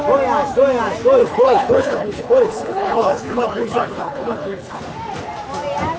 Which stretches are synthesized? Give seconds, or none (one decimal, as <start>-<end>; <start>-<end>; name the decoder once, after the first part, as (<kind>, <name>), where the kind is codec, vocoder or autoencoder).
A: 1.2-4.8 (codec, HILCodec)